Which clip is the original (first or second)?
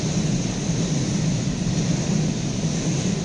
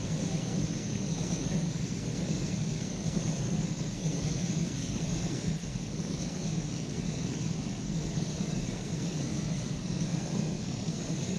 first